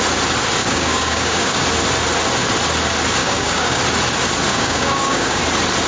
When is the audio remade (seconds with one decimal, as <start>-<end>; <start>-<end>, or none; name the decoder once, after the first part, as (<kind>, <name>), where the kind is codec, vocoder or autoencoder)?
0.6-1.6 (codec, DAC); 3.2-3.8; 4.5-5.4